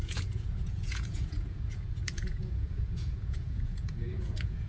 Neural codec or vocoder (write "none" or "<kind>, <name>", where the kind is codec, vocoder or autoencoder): vocoder, Vocos